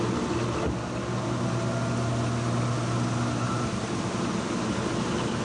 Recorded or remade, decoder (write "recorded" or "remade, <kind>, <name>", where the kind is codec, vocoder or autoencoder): recorded